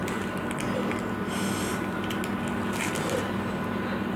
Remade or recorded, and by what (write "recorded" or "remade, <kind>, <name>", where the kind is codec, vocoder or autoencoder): recorded